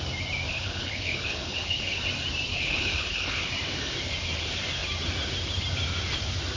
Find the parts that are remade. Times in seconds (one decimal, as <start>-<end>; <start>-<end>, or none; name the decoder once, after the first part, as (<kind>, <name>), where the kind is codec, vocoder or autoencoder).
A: 0.5-2.0 (codec, HILCodec); 2.5-3.5